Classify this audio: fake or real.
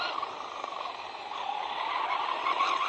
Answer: real